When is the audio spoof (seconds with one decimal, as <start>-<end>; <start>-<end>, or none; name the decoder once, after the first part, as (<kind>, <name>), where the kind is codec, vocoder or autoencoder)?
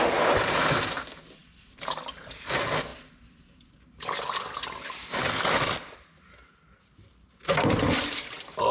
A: none